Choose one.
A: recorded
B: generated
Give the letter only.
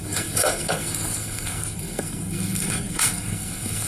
B